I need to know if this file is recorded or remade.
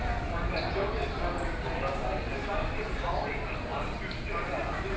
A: recorded